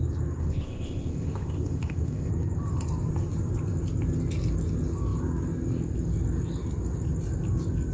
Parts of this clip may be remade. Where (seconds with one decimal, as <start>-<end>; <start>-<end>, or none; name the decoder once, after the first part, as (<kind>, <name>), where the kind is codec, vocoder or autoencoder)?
0.4-2.3 (codec, ZipCodec)